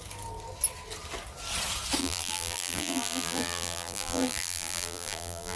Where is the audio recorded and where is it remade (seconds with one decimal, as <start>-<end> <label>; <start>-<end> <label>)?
0.0-2.0 recorded; 2.0-5.6 remade